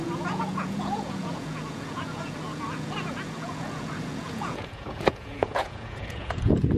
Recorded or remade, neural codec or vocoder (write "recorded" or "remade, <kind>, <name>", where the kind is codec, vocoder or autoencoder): remade, vocoder, Vocos